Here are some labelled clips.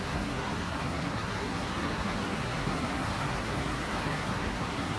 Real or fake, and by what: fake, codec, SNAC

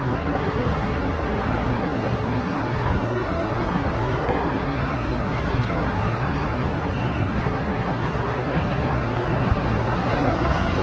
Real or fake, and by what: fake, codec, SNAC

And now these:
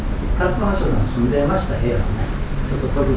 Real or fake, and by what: real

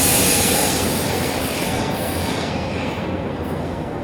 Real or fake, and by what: fake, codec, SNAC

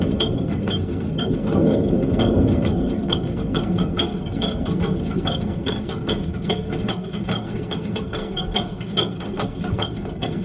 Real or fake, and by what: fake, codec, SNAC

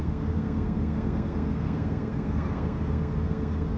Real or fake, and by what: fake, codec, SNAC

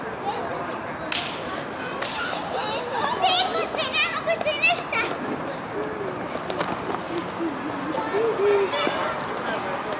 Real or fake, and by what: real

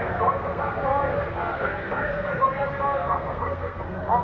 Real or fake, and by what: fake, codec, SNAC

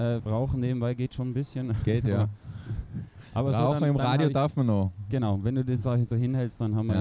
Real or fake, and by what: real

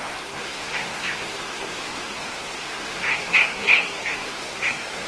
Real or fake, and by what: fake, codec, SNAC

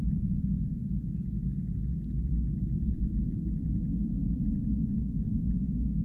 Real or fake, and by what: real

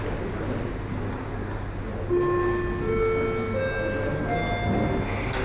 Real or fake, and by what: real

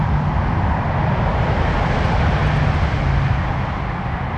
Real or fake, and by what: real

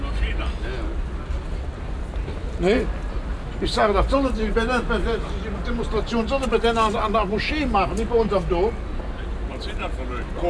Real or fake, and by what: real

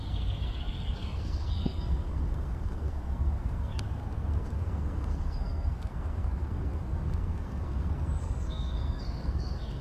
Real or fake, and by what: fake, codec, SNAC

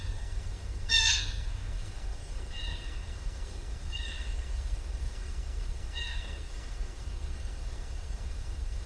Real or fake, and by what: fake, codec, SNAC